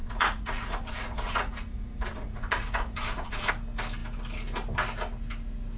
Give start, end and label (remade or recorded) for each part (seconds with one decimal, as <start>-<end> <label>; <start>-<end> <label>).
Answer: 0.0-3.5 remade; 3.5-5.8 recorded